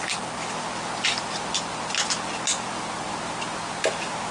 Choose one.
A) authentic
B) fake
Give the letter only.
A